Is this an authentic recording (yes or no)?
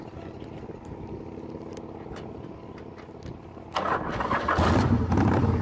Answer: yes